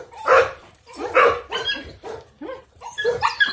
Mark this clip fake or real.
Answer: fake